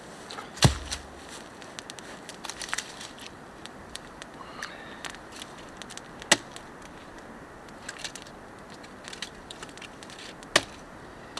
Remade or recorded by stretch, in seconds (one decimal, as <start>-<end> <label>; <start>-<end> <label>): 0.0-2.3 recorded; 2.3-4.7 remade; 4.7-11.4 recorded

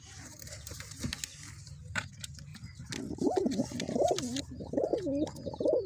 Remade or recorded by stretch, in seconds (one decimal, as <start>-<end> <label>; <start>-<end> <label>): 0.0-1.3 remade; 1.3-1.8 recorded; 1.8-2.5 remade; 2.5-4.4 recorded; 4.4-4.9 remade; 4.9-5.9 recorded

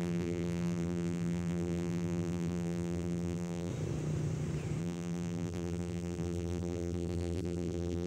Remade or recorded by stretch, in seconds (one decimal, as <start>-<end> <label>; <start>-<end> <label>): 0.0-3.7 remade; 3.7-4.8 recorded; 4.8-8.1 remade

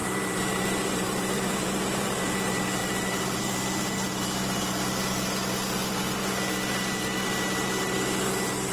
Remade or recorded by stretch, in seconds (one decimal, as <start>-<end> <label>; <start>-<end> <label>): 0.0-2.2 remade; 2.2-2.8 recorded; 2.8-3.4 remade; 3.4-8.7 recorded

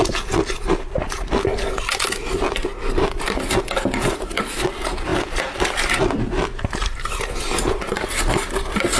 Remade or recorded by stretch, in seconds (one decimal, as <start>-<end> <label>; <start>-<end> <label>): 0.0-6.8 recorded; 6.8-8.1 remade; 8.1-9.0 recorded

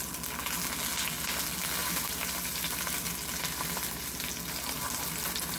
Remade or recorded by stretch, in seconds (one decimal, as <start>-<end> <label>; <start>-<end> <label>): 0.0-1.8 recorded; 1.8-5.6 remade

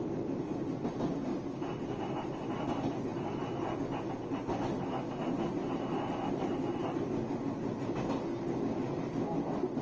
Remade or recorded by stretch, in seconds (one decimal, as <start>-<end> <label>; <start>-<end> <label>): 0.0-9.8 recorded